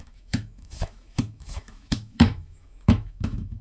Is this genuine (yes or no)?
no